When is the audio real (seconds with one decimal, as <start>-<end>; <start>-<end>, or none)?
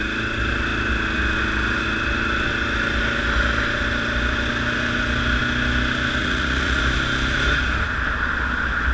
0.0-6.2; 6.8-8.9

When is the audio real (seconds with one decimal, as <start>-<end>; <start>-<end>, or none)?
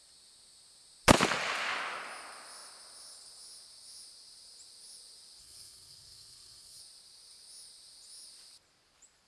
0.0-5.4; 6.8-9.3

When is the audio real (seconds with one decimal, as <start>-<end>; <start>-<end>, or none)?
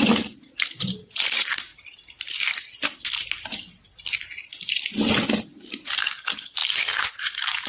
1.7-5.5; 6.6-7.2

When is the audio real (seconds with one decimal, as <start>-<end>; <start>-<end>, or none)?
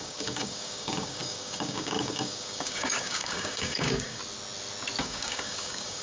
4.2-5.0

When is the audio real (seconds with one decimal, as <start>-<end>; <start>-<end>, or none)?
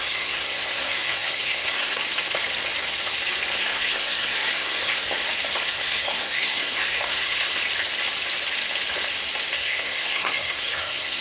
2.0-3.6; 5.0-5.7; 7.6-9.5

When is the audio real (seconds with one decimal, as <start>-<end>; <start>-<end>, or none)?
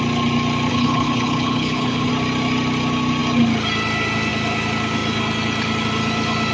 0.0-0.7; 2.1-6.5